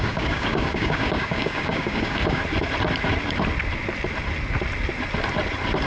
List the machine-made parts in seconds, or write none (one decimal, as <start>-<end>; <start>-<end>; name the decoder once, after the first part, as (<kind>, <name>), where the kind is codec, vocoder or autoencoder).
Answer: 0.0-2.4 (codec, DAC)